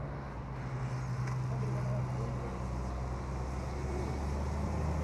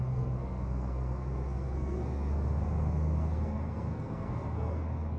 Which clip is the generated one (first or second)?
second